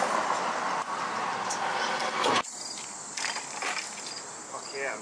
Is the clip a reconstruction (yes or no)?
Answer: no